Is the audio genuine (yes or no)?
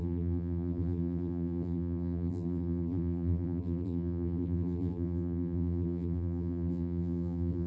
no